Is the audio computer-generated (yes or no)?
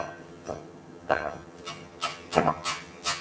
yes